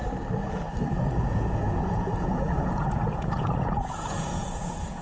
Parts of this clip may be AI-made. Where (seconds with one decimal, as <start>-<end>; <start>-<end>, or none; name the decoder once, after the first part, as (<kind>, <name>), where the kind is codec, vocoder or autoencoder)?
1.2-5.0 (vocoder, Vocos)